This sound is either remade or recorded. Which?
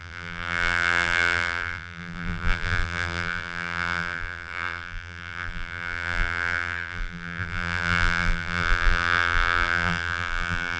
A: remade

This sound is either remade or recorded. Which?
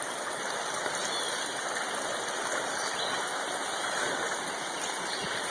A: recorded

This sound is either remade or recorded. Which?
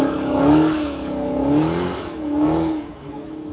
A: remade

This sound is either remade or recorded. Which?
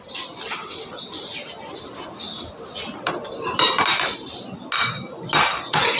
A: recorded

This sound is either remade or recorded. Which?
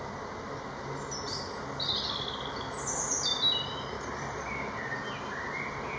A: recorded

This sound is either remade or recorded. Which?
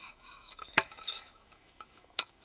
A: remade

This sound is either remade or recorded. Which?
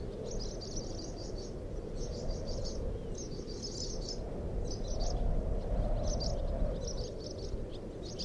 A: recorded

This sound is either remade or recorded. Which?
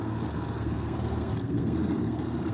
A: remade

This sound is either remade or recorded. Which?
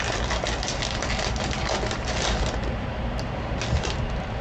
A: recorded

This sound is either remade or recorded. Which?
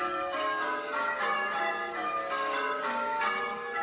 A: remade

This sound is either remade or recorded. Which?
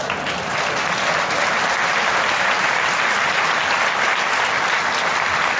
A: recorded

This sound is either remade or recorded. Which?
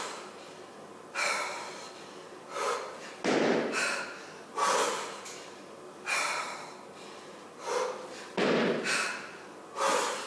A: recorded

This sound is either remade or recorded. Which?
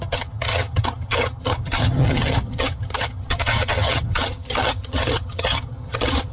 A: remade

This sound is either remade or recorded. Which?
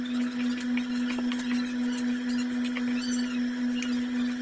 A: recorded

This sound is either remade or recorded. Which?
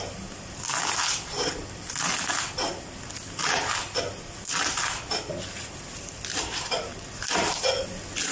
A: recorded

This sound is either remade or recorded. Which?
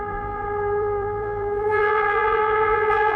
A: remade